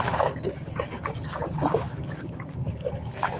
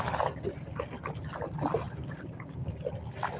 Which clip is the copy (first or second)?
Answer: first